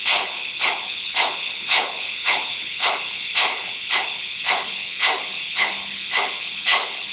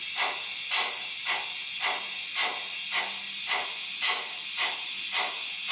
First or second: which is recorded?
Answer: second